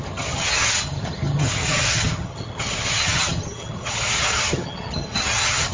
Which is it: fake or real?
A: fake